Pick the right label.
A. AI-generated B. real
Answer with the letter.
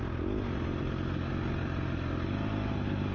B